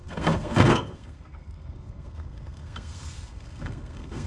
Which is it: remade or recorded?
remade